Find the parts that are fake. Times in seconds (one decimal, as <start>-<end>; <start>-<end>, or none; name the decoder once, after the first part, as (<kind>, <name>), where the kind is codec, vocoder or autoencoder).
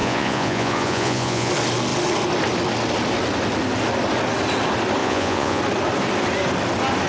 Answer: 0.0-1.5 (vocoder, Vocos); 5.0-5.6